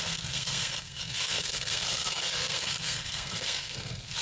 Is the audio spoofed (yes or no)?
yes